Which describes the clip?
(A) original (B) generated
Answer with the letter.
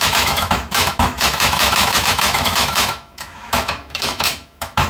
B